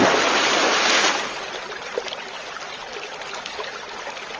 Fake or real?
real